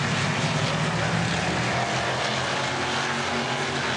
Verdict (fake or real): real